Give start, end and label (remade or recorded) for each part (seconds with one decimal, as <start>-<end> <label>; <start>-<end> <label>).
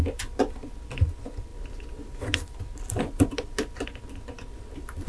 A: 0.0-5.1 recorded